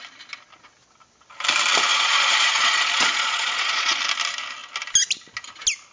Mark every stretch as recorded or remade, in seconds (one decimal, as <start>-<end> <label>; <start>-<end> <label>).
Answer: 0.0-1.9 recorded; 1.9-4.0 remade; 4.0-5.9 recorded